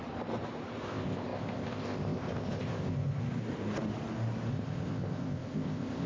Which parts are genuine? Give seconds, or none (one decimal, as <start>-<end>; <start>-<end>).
0.0-0.8; 3.2-4.5